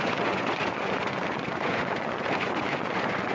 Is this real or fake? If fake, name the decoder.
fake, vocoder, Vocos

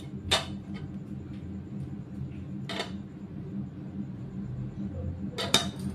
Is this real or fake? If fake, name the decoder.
real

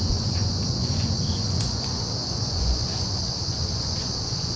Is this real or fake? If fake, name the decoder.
fake, vocoder, Vocos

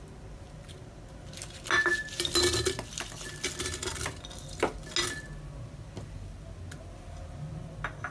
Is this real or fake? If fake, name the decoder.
real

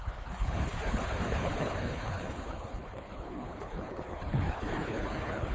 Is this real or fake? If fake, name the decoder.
fake, codec, HILCodec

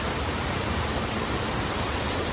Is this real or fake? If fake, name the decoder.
fake, vocoder, BigVGAN v2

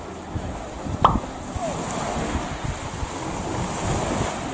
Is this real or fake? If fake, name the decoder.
real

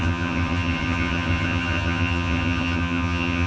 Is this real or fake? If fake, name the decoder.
fake, vocoder, HiFi-GAN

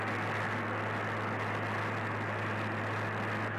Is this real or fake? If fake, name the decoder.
real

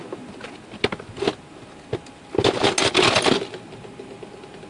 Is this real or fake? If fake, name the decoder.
real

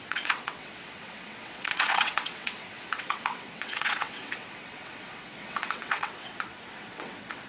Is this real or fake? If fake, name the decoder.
fake, vocoder, WaveNeXt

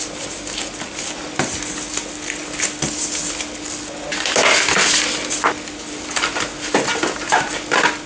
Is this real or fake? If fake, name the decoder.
real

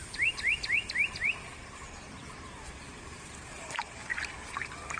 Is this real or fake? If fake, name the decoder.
fake, vocoder, BigVGAN v2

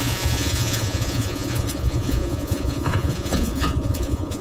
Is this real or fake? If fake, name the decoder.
fake, vocoder, Vocos